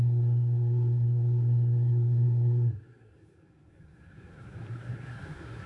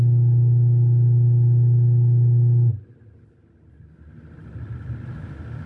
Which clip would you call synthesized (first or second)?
first